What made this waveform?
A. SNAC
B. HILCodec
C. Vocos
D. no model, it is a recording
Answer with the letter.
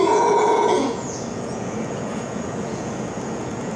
C